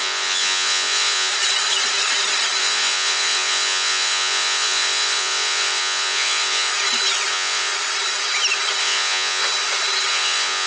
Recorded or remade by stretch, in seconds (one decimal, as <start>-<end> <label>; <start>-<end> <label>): 0.0-1.3 remade; 1.3-2.6 recorded; 2.6-6.7 remade; 6.7-7.3 recorded; 7.3-7.7 remade; 7.7-8.8 recorded; 8.8-9.4 remade; 9.4-10.1 recorded; 10.1-10.7 remade